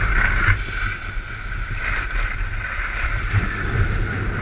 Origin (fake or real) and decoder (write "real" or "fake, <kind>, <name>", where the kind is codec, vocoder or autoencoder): real